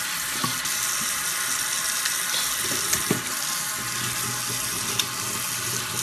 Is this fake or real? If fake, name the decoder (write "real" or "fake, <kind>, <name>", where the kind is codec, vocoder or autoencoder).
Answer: real